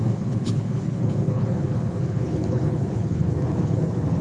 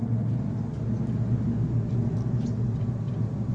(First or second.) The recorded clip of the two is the second